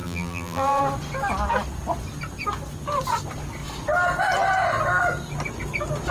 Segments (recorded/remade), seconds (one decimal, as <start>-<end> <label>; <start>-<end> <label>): 0.0-0.8 remade; 0.8-6.1 recorded